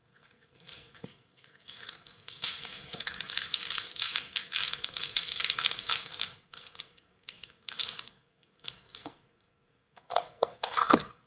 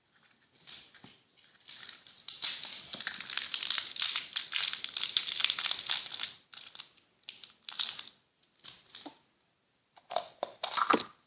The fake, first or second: first